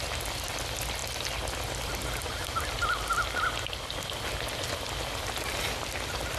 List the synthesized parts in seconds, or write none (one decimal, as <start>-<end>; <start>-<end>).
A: none